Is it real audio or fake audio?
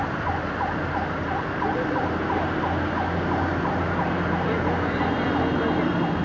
real